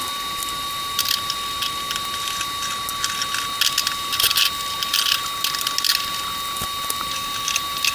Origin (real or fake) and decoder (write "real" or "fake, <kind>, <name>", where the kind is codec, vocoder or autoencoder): real